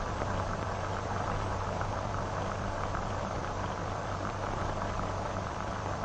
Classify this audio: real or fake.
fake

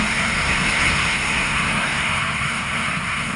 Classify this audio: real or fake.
fake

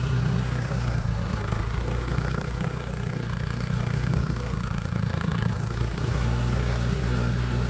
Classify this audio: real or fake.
fake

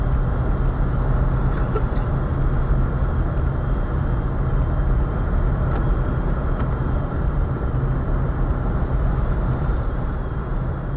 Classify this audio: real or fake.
real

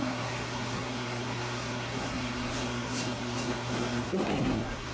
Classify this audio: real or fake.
fake